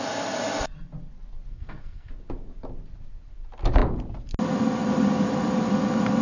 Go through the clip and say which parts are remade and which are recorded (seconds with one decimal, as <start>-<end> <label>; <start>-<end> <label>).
0.0-1.5 recorded; 1.5-2.1 remade; 2.1-6.2 recorded